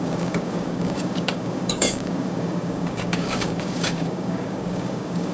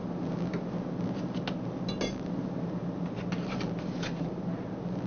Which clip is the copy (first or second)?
first